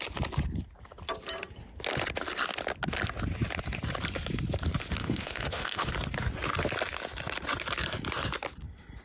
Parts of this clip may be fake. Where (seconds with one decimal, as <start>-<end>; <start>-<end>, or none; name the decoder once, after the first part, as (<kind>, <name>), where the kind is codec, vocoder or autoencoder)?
5.0-5.9 (autoencoder, DAC-VAE)